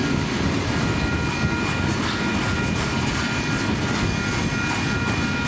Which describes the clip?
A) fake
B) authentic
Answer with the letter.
B